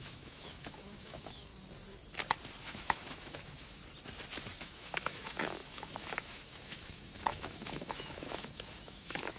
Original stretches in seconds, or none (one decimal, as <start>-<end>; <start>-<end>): 1.5-2.6; 3.8-4.6